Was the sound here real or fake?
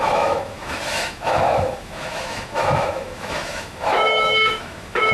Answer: fake